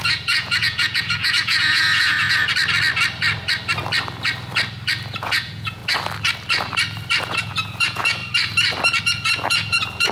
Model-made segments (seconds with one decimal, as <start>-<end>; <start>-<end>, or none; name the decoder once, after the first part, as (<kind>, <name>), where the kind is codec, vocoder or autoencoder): 0.0-2.5 (vocoder, Vocos); 5.1-5.8; 7.2-8.2; 9.0-10.1